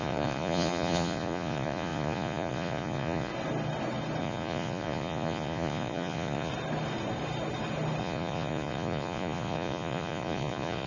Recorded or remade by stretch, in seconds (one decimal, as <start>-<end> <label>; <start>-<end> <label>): 0.0-3.3 remade; 3.3-4.2 recorded; 4.2-6.5 remade; 6.5-8.0 recorded; 8.0-10.9 remade

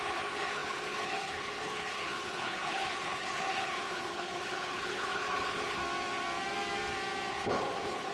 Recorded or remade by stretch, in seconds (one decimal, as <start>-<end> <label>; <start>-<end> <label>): 0.0-5.8 remade; 5.8-7.3 recorded; 7.3-8.1 remade

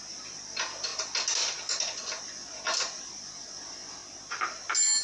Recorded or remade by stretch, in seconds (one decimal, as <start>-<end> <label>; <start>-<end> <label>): 0.0-0.9 remade; 0.9-2.2 recorded; 2.2-4.0 remade; 4.0-5.0 recorded

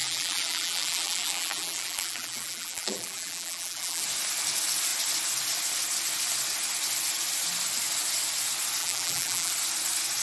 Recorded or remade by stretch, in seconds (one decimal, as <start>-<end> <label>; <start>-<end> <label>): 0.0-4.0 remade; 4.0-8.8 recorded; 8.8-9.5 remade; 9.5-10.2 recorded

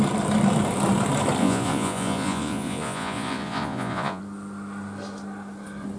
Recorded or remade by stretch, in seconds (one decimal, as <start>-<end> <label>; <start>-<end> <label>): 0.0-1.4 recorded; 1.4-4.2 remade; 4.2-6.0 recorded